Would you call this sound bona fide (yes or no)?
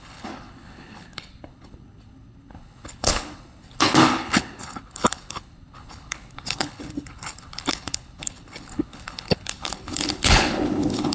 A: no